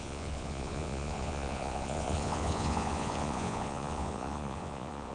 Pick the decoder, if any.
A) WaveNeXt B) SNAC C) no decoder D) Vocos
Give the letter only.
D